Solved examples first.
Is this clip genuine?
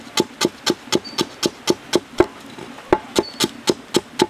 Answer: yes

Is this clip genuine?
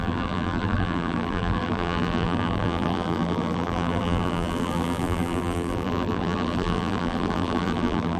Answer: no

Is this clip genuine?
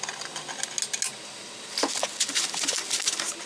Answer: yes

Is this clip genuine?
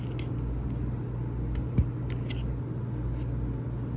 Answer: yes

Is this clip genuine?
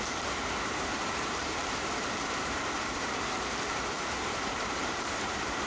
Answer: no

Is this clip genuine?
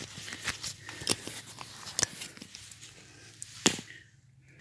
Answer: yes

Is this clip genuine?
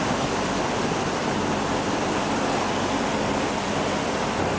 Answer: yes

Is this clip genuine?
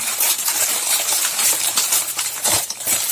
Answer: no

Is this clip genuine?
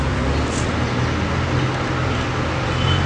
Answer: yes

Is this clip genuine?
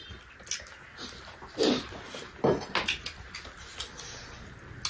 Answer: yes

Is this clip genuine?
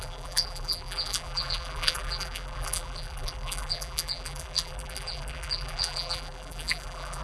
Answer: no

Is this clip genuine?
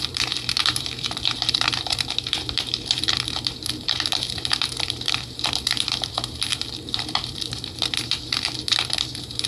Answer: no